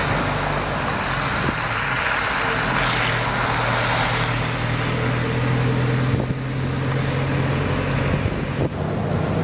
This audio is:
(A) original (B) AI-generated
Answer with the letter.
A